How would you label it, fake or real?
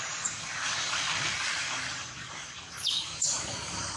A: fake